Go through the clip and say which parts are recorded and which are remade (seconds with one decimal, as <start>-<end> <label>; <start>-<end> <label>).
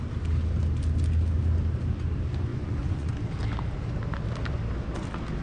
0.0-2.5 recorded; 2.5-3.1 remade; 3.1-5.4 recorded